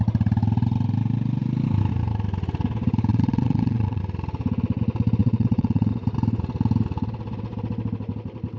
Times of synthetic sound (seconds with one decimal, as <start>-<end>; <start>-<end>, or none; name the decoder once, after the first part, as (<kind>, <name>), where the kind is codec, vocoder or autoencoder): 3.1-4.0 (vocoder, WaveNeXt); 5.2-5.9